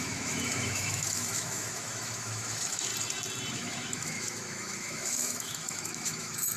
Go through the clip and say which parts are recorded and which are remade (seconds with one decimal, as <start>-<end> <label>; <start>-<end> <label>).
0.0-2.9 remade; 2.9-3.5 recorded; 3.5-6.6 remade